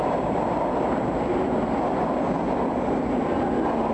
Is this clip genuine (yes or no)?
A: yes